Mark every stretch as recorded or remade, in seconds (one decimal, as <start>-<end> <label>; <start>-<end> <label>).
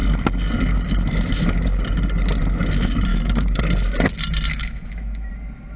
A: 0.0-3.1 recorded; 3.1-3.6 remade; 3.6-4.5 recorded; 4.5-5.3 remade; 5.3-5.8 recorded